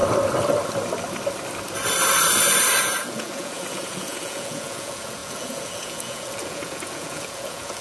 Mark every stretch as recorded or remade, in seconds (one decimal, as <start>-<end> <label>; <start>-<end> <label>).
0.0-2.8 recorded; 2.8-7.8 remade